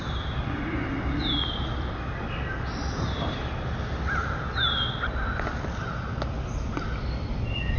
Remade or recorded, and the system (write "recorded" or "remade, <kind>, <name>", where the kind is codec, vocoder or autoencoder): recorded